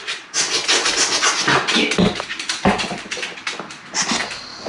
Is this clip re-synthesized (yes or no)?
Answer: no